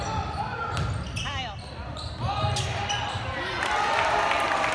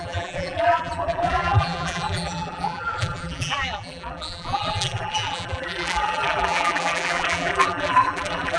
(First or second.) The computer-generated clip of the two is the second